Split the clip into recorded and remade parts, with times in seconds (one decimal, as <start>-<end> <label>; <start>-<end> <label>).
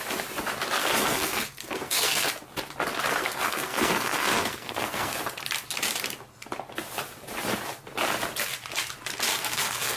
0.0-0.8 recorded; 0.8-2.3 remade; 2.3-3.1 recorded; 3.1-5.2 remade; 5.2-9.3 recorded; 9.3-10.0 remade